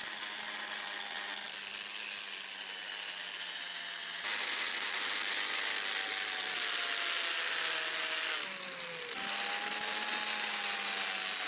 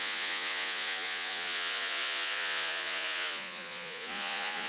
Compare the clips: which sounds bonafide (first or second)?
first